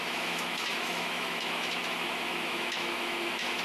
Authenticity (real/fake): fake